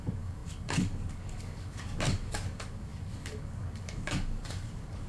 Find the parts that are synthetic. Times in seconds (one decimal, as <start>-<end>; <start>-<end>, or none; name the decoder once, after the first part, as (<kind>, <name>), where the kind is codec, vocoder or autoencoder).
0.0-5.1 (codec, DAC)